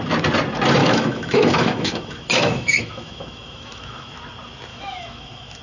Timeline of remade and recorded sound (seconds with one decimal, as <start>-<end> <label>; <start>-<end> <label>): 0.0-0.8 recorded; 0.8-4.2 remade; 4.2-4.7 recorded; 4.7-5.6 remade